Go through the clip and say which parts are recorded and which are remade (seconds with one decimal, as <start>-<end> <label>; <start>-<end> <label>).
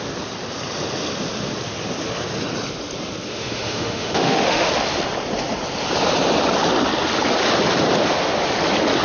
0.0-3.3 recorded; 3.3-4.7 remade; 4.7-9.0 recorded